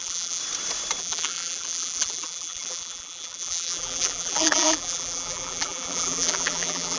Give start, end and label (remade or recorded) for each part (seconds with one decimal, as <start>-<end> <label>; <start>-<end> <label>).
0.0-0.4 remade; 0.4-1.0 recorded; 1.0-7.0 remade